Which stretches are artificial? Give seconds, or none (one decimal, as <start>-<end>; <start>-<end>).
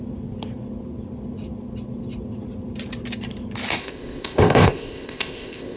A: 3.8-5.8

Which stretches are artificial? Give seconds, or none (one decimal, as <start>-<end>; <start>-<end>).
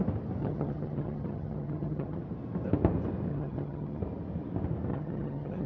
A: 0.4-2.2; 3.3-4.0; 4.9-5.7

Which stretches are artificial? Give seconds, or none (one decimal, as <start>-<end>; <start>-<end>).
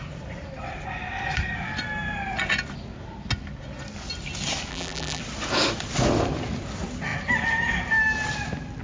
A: 4.7-5.2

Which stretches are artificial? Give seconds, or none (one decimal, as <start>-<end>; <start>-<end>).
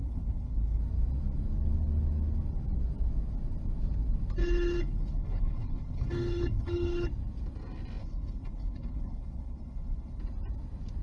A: 0.0-0.8; 4.4-7.1; 8.0-10.2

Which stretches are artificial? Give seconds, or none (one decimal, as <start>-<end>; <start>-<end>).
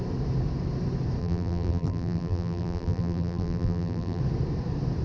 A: 1.2-4.2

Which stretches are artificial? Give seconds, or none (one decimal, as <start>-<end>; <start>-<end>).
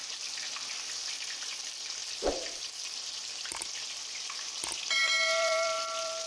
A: 0.8-6.3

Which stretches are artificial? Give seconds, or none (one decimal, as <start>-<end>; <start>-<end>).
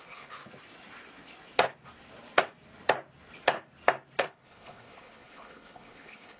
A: 0.0-0.4; 4.2-6.4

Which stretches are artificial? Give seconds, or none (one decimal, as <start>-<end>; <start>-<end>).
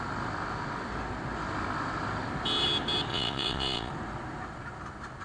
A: 3.1-3.9